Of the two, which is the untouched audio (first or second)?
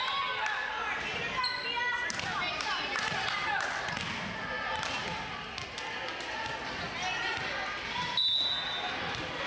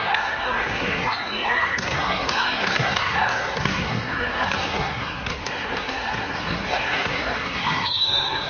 first